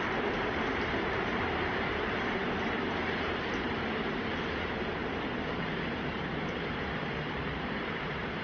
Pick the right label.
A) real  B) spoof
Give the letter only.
B